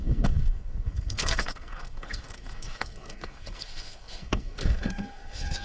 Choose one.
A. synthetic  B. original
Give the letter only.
A